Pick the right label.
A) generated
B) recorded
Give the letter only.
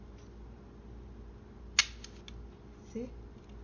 B